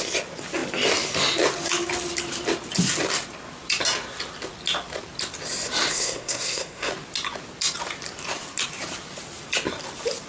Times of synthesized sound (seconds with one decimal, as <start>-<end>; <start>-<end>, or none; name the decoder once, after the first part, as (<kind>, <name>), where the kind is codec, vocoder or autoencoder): 5.9-6.9 (codec, SNAC)